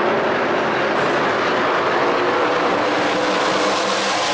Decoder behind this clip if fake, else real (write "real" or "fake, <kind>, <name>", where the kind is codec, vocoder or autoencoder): real